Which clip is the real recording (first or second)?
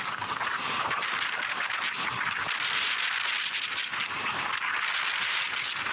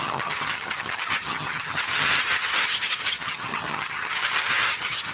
first